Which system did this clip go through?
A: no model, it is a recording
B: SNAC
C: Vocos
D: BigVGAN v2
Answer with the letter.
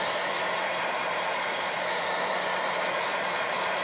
D